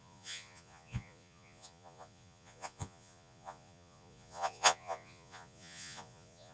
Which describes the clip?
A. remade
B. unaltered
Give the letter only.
A